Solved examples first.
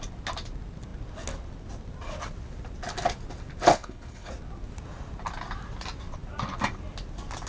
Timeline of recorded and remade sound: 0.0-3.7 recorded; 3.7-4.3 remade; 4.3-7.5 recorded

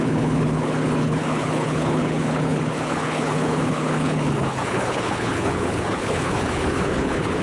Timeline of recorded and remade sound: 0.0-7.4 remade

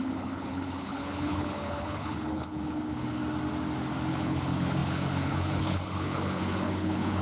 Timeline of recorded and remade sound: 0.0-3.2 remade; 3.2-4.1 recorded; 4.1-7.2 remade

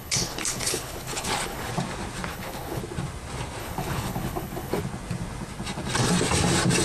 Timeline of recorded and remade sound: 0.0-1.7 remade; 1.7-2.3 recorded; 2.3-2.8 remade; 2.8-3.6 recorded; 3.6-4.8 remade; 4.8-6.8 recorded

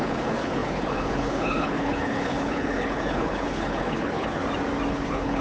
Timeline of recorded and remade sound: 0.0-4.4 remade; 4.4-4.9 recorded; 4.9-5.4 remade

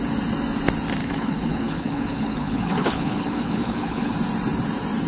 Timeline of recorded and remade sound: 0.0-1.0 recorded; 1.0-4.1 remade; 4.1-5.1 recorded

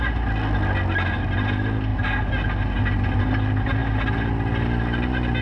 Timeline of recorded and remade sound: 0.0-5.4 recorded

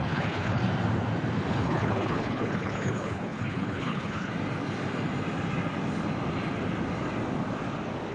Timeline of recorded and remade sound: 0.0-0.6 remade; 0.6-1.5 recorded; 1.5-4.3 remade; 4.3-8.1 recorded